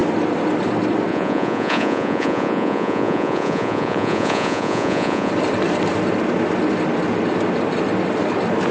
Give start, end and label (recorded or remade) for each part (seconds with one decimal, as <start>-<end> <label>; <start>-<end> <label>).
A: 0.0-1.1 recorded; 1.1-5.3 remade; 5.3-8.7 recorded

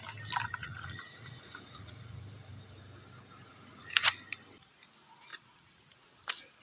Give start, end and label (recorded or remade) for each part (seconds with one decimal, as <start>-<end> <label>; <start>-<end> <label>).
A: 0.0-0.6 recorded; 0.6-2.2 remade; 2.2-3.5 recorded; 3.5-4.1 remade; 4.1-5.3 recorded; 5.3-6.1 remade; 6.1-6.6 recorded

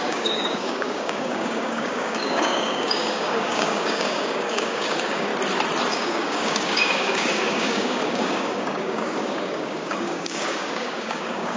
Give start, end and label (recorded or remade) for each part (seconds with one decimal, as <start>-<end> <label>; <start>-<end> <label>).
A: 0.0-5.3 remade; 5.3-5.9 recorded; 5.9-11.6 remade

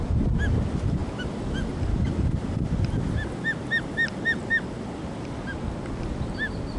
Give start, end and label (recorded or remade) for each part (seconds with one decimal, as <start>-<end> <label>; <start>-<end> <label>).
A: 0.0-6.8 recorded

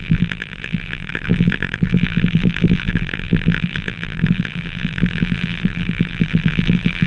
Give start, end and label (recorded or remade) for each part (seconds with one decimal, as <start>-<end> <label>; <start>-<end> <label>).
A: 0.0-7.1 remade